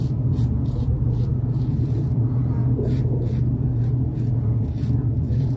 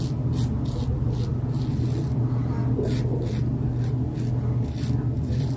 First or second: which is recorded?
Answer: second